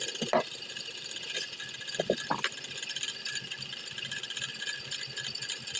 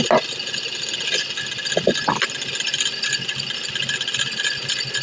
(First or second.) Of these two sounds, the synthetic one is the first